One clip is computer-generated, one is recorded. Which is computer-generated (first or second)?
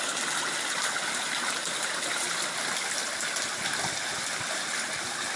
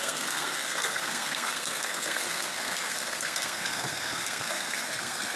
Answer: second